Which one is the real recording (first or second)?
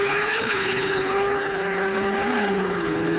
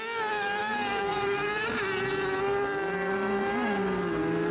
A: second